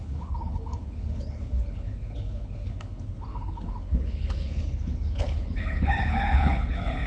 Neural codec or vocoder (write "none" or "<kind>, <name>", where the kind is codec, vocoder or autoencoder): codec, HILCodec